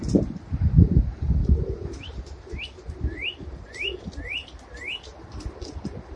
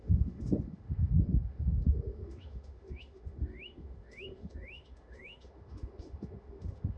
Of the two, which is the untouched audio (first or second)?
first